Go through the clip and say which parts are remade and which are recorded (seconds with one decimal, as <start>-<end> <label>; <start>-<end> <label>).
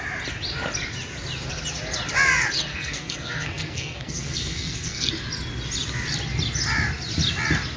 0.0-2.7 recorded; 2.7-5.1 remade; 5.1-7.8 recorded